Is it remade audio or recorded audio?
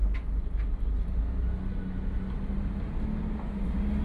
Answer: recorded